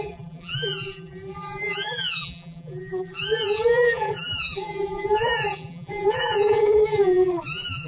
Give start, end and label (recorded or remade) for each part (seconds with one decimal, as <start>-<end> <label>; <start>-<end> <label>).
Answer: 0.0-7.9 remade